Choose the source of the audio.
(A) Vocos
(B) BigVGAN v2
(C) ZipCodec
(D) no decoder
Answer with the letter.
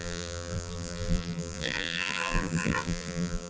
B